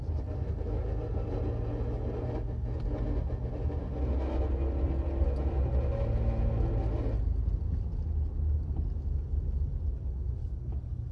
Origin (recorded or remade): recorded